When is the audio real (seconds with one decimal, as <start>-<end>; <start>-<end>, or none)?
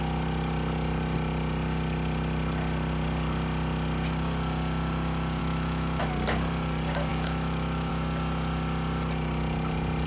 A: 0.0-5.4; 6.0-7.1; 7.9-10.1